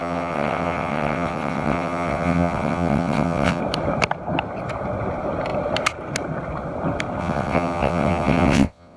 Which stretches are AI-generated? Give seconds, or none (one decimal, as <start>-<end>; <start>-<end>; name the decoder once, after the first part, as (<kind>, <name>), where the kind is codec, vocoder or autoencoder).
0.0-3.6 (vocoder, WaveNeXt); 7.2-9.0